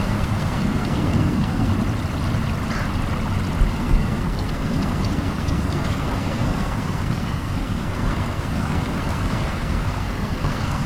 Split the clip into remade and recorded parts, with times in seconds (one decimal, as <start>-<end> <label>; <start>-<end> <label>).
0.0-1.7 remade; 1.7-3.7 recorded; 3.7-10.9 remade